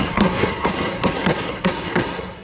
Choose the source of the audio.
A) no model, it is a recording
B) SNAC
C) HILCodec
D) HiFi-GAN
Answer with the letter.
B